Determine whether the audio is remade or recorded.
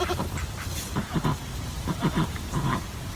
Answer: remade